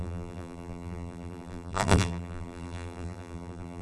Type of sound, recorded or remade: remade